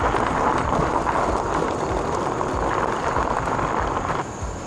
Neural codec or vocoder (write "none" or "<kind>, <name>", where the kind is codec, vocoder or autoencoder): none